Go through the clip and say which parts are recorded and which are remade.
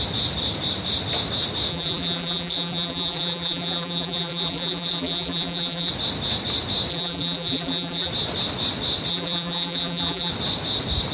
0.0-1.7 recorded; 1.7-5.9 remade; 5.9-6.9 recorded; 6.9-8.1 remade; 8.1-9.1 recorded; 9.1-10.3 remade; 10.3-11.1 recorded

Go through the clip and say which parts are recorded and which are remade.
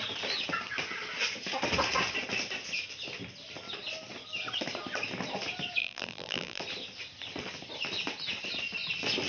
0.0-5.8 recorded; 5.8-6.6 remade; 6.6-9.3 recorded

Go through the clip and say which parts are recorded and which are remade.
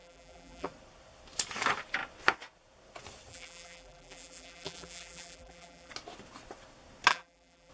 0.0-0.7 remade; 0.7-3.3 recorded; 3.3-5.9 remade; 5.9-7.1 recorded; 7.1-7.7 remade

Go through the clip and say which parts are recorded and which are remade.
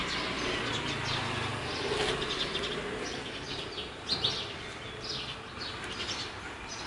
0.0-1.5 recorded; 1.5-2.1 remade; 2.1-6.9 recorded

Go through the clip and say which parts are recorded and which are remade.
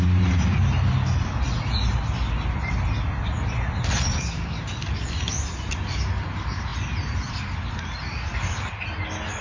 0.0-9.4 recorded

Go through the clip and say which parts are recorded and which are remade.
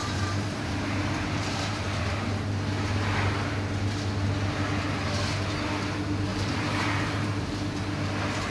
0.0-2.0 remade; 2.0-6.3 recorded; 6.3-7.5 remade; 7.5-8.5 recorded